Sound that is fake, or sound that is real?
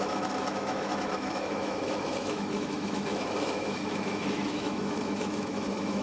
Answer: fake